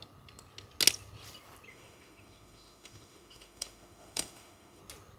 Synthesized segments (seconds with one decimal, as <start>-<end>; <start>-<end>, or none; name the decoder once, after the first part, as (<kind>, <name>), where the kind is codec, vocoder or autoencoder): 1.7-4.8 (autoencoder, DAC-VAE)